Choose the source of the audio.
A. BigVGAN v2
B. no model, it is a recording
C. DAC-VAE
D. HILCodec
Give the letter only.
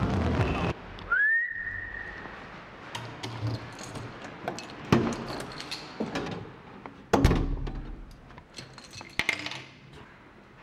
B